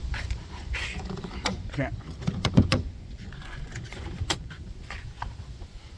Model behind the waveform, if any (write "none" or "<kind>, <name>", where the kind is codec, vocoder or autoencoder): vocoder, Vocos